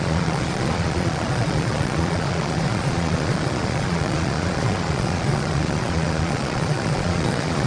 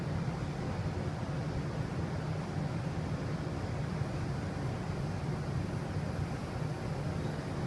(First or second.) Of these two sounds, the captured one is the second